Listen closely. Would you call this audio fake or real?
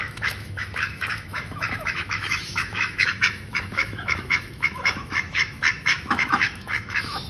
fake